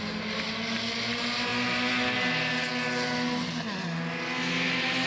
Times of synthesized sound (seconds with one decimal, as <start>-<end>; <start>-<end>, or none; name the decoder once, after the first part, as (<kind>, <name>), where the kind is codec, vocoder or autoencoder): none